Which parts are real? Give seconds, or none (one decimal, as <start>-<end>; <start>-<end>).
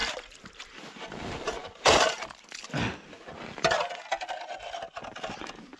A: 0.0-5.8